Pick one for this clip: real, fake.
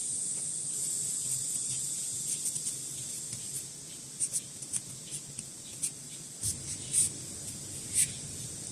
real